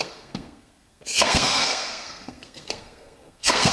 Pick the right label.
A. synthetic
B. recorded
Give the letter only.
A